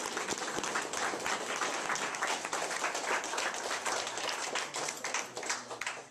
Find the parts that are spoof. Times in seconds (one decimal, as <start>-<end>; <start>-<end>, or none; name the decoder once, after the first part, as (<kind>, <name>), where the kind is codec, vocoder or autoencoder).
none